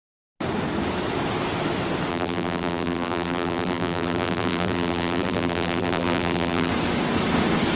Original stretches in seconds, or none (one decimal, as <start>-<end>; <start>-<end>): 0.0-2.1; 6.7-7.8

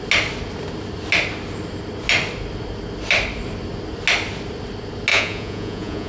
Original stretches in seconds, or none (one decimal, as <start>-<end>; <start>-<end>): 0.0-5.1

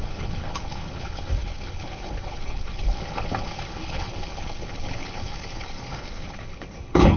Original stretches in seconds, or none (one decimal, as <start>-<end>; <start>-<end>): none

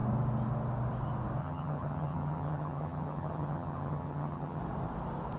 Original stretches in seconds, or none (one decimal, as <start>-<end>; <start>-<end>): 0.0-1.4; 4.6-5.4

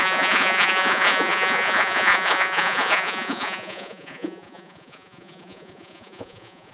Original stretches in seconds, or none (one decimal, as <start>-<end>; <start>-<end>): none

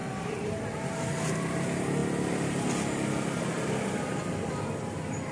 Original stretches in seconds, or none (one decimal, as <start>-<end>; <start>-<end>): 0.0-5.3